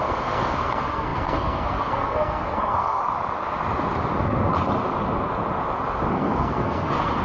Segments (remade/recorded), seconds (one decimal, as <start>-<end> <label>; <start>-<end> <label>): 0.0-3.0 remade; 3.0-6.1 recorded; 6.1-7.2 remade